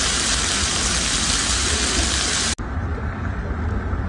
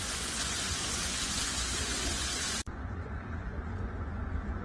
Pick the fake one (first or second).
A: second